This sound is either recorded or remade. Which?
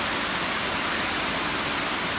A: recorded